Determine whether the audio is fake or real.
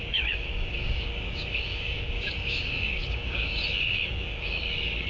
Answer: fake